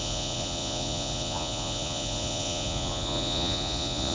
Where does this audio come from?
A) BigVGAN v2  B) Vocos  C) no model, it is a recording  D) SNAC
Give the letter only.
B